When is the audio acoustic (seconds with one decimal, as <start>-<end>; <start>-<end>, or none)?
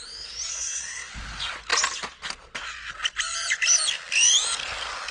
0.0-0.5; 1.1-5.1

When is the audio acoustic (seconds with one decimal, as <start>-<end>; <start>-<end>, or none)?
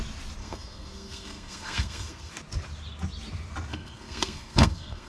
0.0-0.4; 2.3-3.7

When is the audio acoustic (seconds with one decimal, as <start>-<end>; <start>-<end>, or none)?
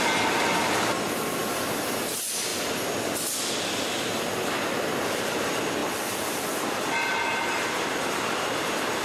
0.0-9.0